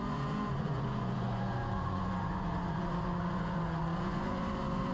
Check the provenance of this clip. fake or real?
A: fake